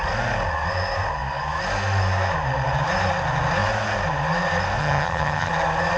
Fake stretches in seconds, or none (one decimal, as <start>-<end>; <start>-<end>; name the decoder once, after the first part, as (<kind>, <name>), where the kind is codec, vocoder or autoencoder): 4.8-5.5 (vocoder, HiFi-GAN)